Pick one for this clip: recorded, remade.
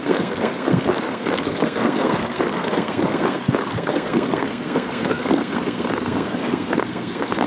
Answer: remade